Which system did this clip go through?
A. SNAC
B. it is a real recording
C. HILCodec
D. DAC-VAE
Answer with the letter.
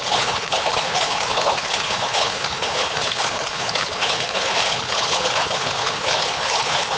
C